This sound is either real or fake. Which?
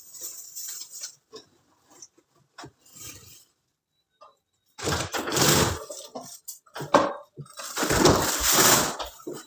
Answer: fake